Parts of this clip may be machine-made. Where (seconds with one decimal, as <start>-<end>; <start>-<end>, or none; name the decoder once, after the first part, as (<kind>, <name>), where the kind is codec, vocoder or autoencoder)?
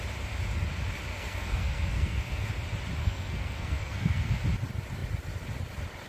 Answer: 1.1-2.5 (codec, SNAC); 3.0-4.4